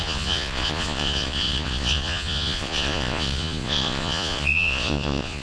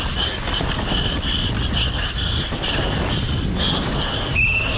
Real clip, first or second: second